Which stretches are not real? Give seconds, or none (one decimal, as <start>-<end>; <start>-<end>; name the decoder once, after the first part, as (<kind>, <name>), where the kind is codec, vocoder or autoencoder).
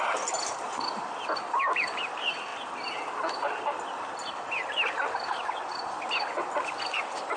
none